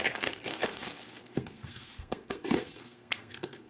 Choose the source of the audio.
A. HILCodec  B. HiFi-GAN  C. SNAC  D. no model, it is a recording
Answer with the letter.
C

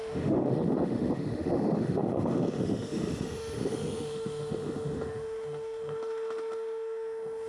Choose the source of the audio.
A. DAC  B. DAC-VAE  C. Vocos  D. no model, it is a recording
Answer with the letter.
B